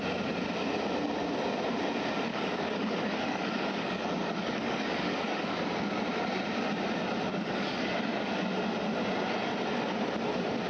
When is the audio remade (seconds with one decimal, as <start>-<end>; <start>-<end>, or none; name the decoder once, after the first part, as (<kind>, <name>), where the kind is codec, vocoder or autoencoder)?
2.3-5.6 (codec, DAC); 7.3-8.3